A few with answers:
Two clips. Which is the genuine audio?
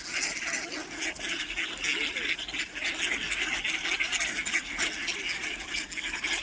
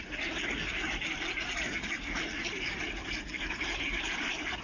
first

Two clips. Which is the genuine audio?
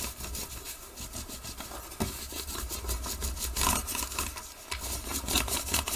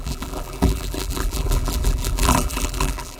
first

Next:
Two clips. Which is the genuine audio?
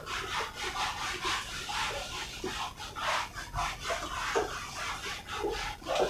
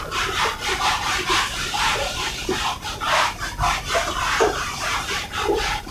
first